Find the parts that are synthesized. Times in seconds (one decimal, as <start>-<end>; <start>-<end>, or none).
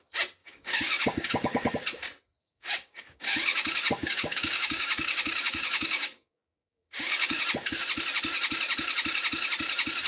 0.4-1.7; 2.4-7.4